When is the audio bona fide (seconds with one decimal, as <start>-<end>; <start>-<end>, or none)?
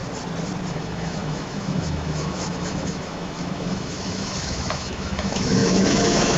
0.0-0.7